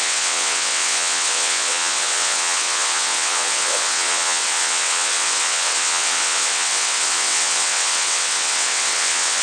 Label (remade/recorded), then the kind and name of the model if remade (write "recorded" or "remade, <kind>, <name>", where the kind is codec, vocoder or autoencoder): remade, vocoder, WaveNeXt